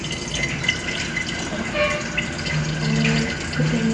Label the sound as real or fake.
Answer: real